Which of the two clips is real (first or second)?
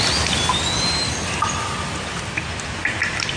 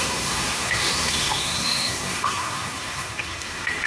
first